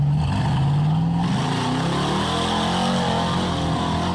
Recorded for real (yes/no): yes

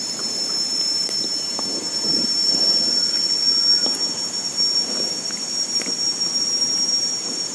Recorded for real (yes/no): no